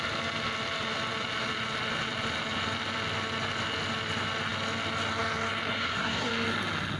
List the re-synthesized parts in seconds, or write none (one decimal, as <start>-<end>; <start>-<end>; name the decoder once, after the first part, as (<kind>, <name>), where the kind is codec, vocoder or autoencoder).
5.7-6.3 (codec, SNAC)